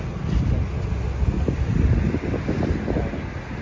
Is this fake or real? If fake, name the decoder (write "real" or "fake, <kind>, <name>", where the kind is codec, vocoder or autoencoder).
real